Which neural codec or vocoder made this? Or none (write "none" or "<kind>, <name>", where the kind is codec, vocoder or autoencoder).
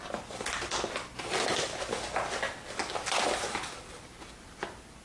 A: none